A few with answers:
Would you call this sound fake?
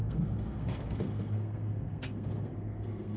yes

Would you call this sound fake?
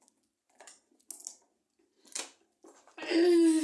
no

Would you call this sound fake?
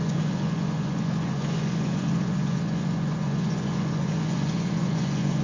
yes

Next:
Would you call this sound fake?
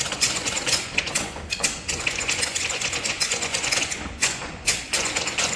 yes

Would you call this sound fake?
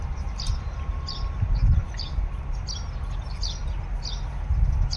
no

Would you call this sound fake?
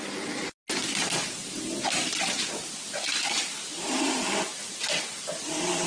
no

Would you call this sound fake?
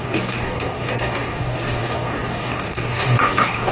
yes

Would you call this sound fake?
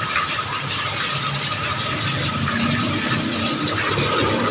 no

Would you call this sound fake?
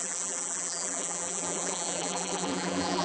yes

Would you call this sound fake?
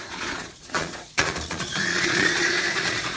yes